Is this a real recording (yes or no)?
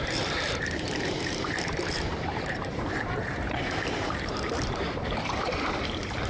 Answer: no